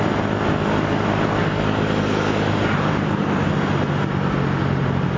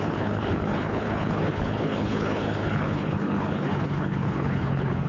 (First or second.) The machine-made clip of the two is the second